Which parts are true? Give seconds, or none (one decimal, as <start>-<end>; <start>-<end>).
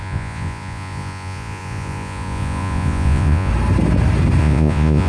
3.5-4.4